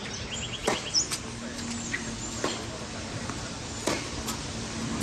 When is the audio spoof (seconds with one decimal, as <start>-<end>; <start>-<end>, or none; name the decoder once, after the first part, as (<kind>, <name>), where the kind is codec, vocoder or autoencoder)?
none